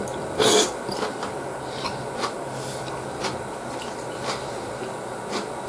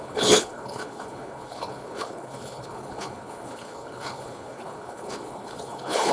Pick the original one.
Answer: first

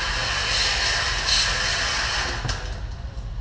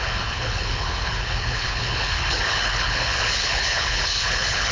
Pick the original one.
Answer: first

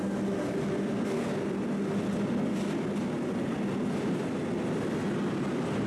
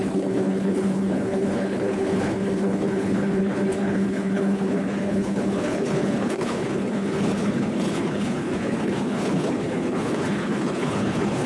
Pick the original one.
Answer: first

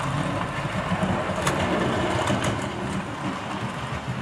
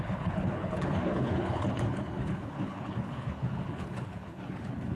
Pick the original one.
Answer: first